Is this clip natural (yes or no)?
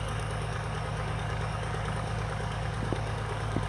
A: no